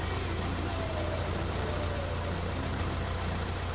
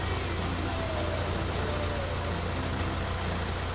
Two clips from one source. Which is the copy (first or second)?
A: first